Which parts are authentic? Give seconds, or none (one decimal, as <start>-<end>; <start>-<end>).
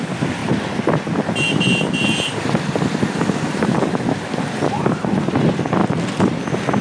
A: 0.0-6.8